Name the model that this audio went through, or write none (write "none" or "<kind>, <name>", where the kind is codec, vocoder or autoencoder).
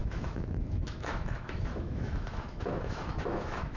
autoencoder, DAC-VAE